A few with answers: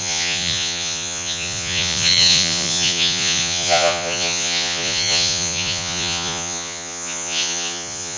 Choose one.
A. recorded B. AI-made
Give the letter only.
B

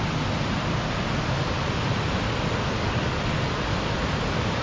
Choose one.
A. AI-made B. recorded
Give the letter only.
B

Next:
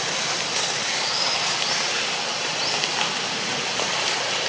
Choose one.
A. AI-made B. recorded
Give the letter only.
B